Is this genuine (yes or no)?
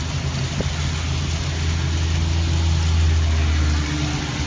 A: yes